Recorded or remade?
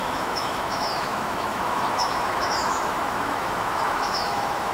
remade